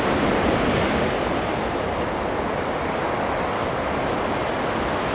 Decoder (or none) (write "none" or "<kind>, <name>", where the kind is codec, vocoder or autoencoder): none